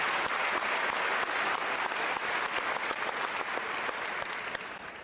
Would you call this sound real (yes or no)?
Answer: yes